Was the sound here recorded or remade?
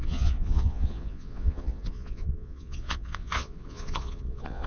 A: remade